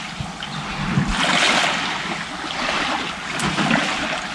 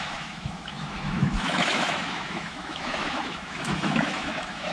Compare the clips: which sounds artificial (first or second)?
second